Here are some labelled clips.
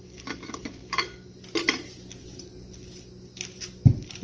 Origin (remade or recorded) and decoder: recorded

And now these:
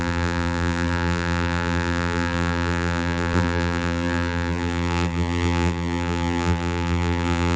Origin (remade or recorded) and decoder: remade, vocoder, BigVGAN v2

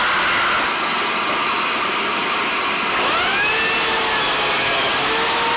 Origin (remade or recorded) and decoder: recorded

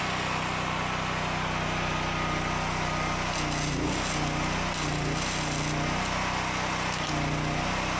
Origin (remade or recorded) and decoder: recorded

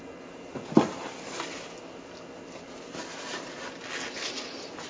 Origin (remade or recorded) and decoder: recorded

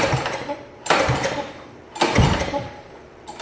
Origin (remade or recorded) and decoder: remade, vocoder, BigVGAN v2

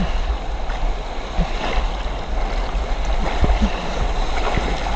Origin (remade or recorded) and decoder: recorded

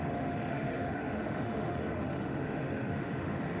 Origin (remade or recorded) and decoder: remade, autoencoder, DAC-VAE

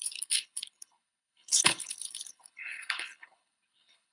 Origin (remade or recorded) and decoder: remade, codec, HILCodec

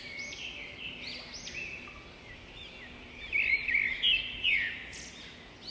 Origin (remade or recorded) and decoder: recorded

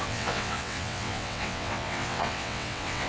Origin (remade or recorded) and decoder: remade, vocoder, WaveNeXt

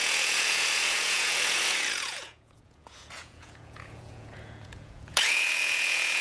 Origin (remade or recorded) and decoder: remade, vocoder, Vocos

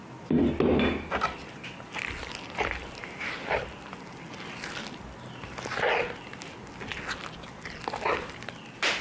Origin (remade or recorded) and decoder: recorded